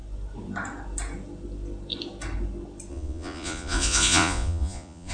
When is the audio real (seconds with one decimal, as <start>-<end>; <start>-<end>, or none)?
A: 0.0-2.9